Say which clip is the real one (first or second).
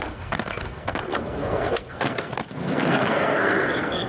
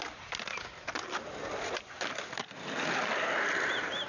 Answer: second